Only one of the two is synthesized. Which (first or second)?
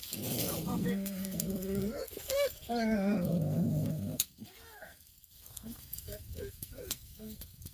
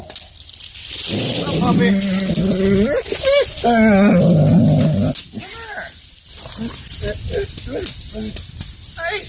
first